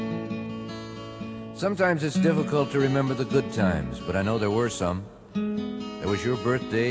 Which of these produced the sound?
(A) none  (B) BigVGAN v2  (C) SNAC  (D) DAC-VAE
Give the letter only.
A